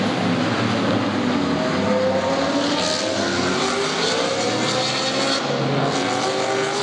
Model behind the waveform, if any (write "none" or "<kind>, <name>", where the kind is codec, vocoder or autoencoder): none